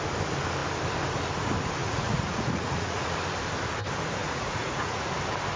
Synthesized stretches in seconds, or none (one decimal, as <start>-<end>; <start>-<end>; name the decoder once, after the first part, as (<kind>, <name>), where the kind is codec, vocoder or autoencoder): 1.8-3.2 (vocoder, Vocos); 4.2-5.1